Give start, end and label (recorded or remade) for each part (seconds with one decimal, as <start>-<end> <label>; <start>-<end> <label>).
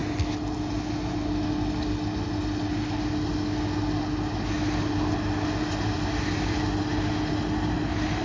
0.0-8.2 recorded